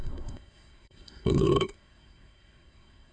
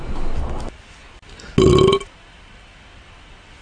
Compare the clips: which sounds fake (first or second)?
first